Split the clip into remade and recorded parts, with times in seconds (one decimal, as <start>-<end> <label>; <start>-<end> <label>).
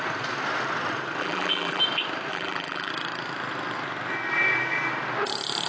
0.0-1.2 recorded; 1.2-1.8 remade; 1.8-2.3 recorded; 2.3-2.9 remade; 2.9-5.7 recorded